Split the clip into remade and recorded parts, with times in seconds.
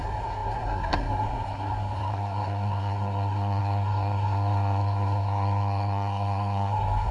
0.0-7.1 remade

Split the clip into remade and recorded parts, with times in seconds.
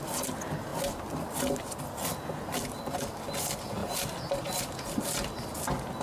0.0-6.0 recorded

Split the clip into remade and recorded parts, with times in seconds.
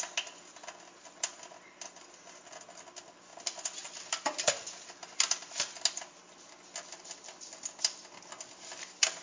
0.0-9.2 recorded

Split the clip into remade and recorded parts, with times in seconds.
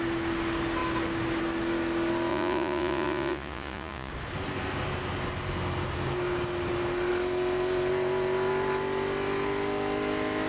0.0-2.3 recorded; 2.3-4.1 remade; 4.1-10.5 recorded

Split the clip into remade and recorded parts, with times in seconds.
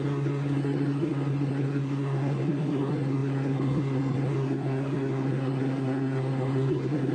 0.0-7.1 remade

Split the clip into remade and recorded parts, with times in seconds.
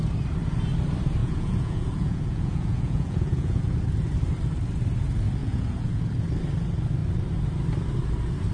0.0-1.2 recorded; 1.2-3.6 remade; 3.6-5.4 recorded; 5.4-6.0 remade; 6.0-8.5 recorded